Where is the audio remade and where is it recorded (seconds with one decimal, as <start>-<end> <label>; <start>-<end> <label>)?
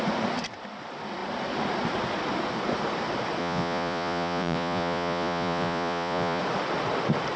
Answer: 0.0-3.4 recorded; 3.4-6.4 remade; 6.4-7.4 recorded